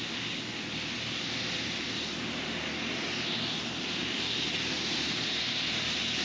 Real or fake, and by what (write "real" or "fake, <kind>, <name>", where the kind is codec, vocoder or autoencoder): real